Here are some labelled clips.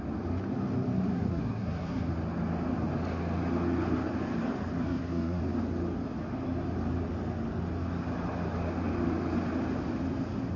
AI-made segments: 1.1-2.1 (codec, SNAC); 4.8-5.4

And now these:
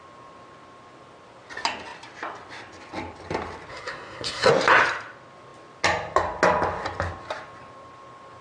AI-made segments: 3.7-4.5 (codec, SNAC)